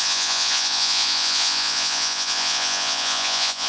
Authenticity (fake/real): fake